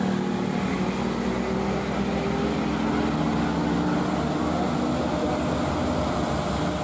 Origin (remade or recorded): recorded